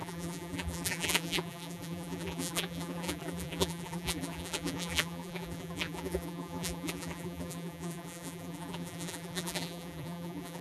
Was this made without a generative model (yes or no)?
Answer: no